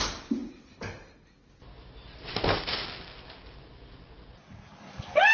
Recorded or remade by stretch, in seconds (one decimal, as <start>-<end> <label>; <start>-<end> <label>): 0.0-5.3 recorded